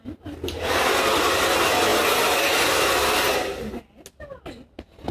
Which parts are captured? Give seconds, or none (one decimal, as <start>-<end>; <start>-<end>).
0.0-5.1